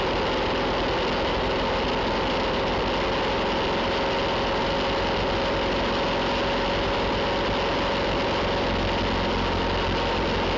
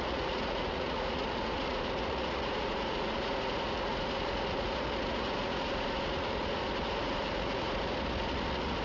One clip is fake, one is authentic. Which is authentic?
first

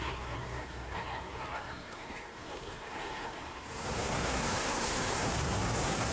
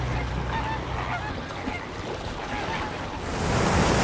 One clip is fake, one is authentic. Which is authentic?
second